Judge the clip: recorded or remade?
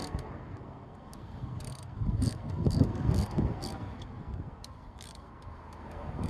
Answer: remade